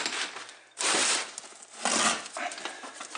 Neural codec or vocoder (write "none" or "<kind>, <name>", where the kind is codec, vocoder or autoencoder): none